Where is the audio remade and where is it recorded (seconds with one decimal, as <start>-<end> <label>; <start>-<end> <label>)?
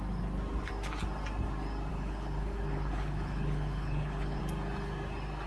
0.0-1.9 recorded; 1.9-4.4 remade; 4.4-5.5 recorded